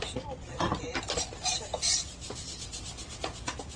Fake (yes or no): no